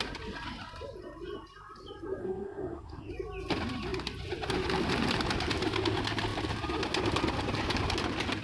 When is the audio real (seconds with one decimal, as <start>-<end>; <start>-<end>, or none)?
0.0-2.2; 3.1-8.4